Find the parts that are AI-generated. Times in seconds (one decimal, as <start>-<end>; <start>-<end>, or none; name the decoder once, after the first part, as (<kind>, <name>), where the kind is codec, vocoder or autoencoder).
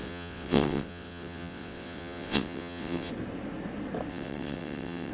0.0-3.1 (vocoder, WaveNeXt); 4.1-5.1